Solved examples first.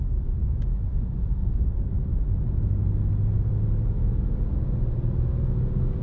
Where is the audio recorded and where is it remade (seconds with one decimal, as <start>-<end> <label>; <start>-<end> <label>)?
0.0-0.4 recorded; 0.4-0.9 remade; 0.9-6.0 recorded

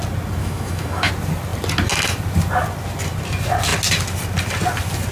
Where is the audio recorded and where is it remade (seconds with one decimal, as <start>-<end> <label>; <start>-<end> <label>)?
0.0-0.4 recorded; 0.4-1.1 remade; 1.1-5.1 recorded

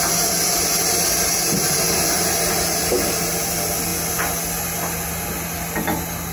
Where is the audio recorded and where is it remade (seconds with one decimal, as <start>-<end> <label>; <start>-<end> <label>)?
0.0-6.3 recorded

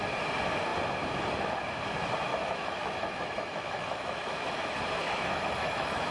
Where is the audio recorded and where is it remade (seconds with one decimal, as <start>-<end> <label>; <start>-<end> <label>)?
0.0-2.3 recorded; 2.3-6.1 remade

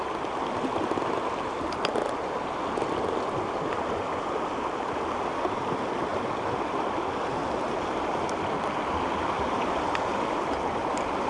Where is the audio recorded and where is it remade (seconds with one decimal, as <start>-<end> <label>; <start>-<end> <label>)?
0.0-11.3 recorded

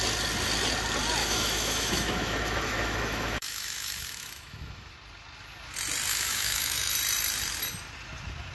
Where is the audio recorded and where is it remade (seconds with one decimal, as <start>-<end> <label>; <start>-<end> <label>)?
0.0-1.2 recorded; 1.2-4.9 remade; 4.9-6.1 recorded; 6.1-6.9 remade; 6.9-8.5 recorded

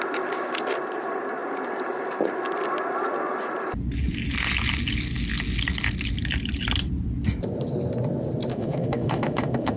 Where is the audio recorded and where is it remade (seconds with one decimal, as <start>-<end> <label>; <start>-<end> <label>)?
0.0-8.5 recorded; 8.5-9.8 remade

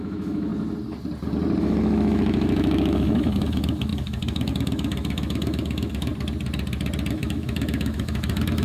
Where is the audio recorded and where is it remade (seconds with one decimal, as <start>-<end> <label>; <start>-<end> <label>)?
0.0-0.5 remade; 0.5-1.6 recorded; 1.6-6.1 remade; 6.1-7.1 recorded; 7.1-8.6 remade